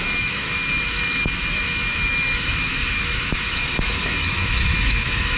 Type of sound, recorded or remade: remade